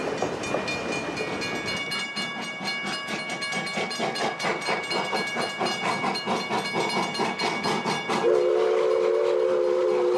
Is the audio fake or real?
real